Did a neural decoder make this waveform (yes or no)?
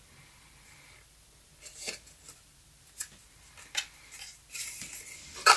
no